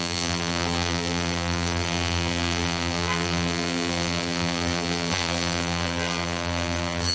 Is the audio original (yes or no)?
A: no